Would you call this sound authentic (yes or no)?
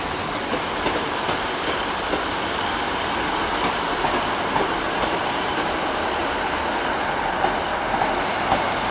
yes